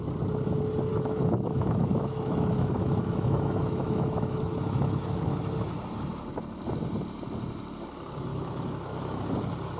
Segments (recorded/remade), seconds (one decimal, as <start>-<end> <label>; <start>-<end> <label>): 0.0-0.9 recorded; 0.9-5.4 remade; 5.4-8.3 recorded; 8.3-9.2 remade; 9.2-9.8 recorded